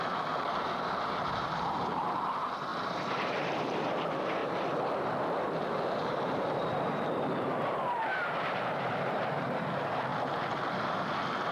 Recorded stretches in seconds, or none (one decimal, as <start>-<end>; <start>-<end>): 4.4-5.6; 10.1-11.5